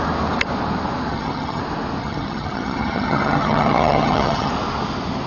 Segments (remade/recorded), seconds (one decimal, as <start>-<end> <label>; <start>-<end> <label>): 0.0-1.1 recorded; 1.1-1.6 remade; 1.6-2.0 recorded; 2.0-4.5 remade; 4.5-5.3 recorded